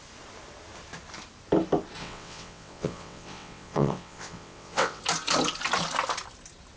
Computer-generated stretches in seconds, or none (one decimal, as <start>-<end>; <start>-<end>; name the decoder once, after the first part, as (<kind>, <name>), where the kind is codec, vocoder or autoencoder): 2.0-5.0 (vocoder, WaveNeXt)